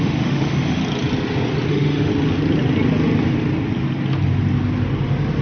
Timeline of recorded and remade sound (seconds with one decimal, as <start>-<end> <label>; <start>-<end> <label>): 0.0-0.8 remade; 0.8-1.7 recorded; 1.7-2.1 remade; 2.1-5.4 recorded